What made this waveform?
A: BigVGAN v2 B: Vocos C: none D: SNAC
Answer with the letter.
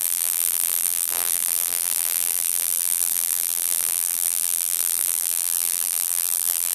A